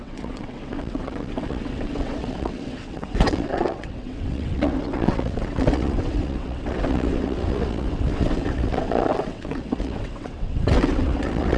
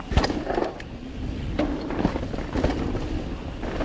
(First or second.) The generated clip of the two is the first